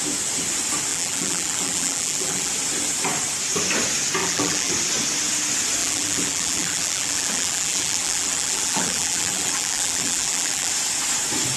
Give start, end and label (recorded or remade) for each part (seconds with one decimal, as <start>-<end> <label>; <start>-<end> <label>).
0.0-0.9 recorded; 0.9-2.5 remade; 2.5-4.2 recorded; 4.2-4.7 remade; 4.7-5.8 recorded; 5.8-10.7 remade; 10.7-11.6 recorded